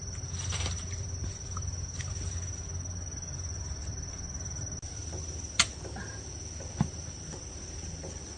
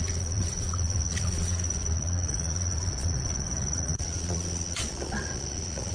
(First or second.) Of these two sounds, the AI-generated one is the second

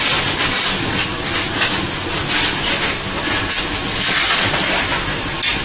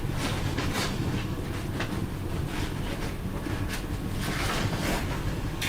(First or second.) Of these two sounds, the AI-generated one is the second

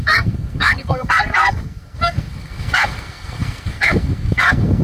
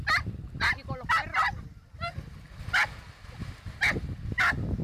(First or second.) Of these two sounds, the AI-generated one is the first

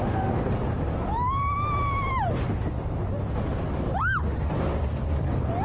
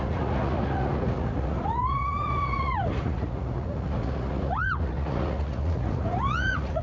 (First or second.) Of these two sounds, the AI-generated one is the second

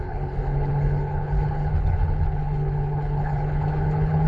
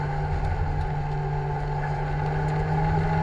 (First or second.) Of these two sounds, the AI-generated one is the first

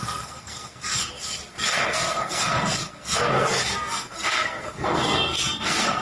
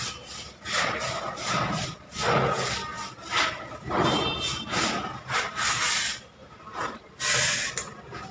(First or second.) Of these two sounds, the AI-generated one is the first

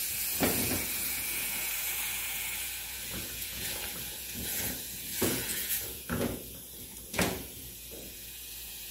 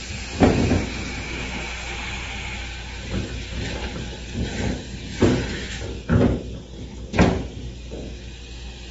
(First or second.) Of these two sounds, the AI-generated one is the first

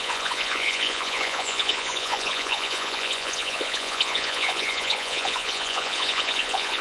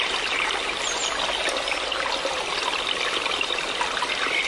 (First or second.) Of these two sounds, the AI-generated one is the first